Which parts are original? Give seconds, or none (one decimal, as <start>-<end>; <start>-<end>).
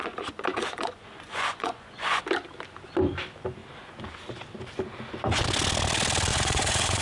2.2-6.3